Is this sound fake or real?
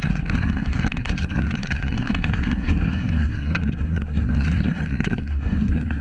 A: fake